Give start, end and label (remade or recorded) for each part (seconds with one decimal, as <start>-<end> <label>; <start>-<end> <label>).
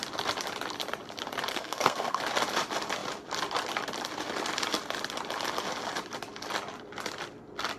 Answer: 0.0-1.5 recorded; 1.5-2.2 remade; 2.2-7.8 recorded